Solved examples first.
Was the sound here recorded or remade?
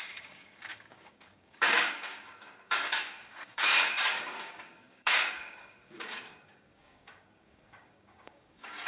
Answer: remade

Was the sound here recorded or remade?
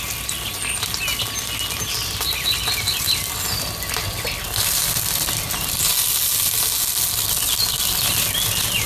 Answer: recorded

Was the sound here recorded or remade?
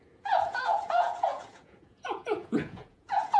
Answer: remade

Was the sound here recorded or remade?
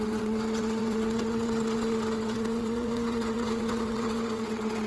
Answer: remade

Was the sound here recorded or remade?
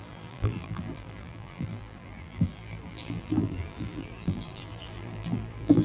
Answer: remade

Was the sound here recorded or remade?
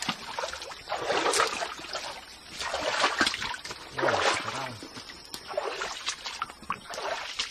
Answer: recorded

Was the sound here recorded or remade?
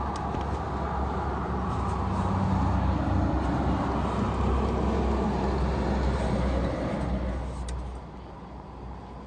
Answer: recorded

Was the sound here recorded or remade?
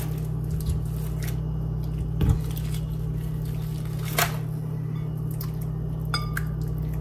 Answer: recorded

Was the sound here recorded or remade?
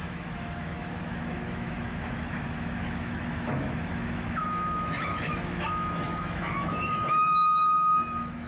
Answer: remade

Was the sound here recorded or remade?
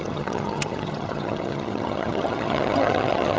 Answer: remade